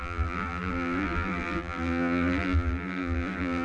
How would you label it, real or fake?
fake